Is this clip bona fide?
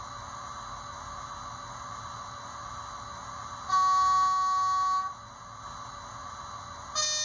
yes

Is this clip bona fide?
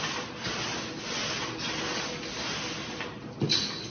yes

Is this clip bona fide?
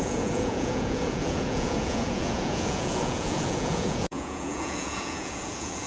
no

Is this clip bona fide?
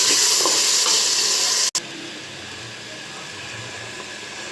yes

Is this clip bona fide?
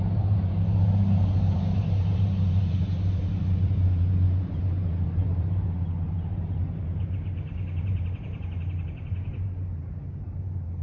no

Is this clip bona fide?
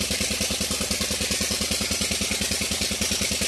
yes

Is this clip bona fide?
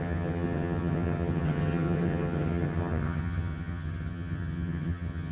no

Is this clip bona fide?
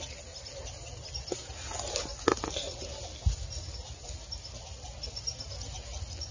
yes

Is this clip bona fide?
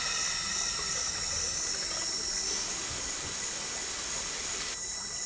yes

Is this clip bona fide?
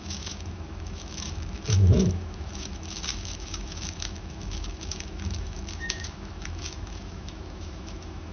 no